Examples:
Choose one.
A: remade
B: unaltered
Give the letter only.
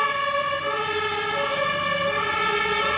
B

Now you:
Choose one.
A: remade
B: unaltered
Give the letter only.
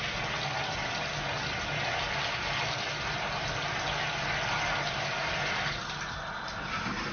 B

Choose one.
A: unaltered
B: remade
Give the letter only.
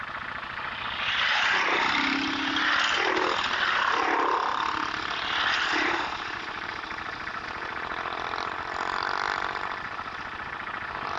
A